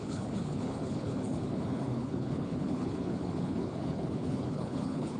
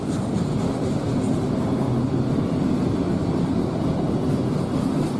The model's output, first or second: first